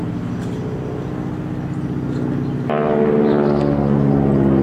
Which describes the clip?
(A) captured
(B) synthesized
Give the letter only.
A